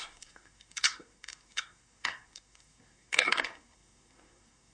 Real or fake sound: fake